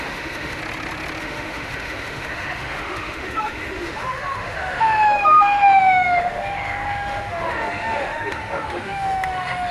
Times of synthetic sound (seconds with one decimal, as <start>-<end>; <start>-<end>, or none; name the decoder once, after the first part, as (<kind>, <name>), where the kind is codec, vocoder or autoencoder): 0.0-0.6 (autoencoder, DAC-VAE); 1.2-9.7